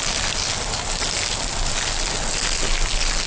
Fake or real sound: real